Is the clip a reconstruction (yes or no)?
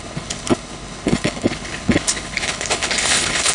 yes